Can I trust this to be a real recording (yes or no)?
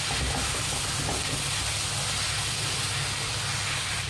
yes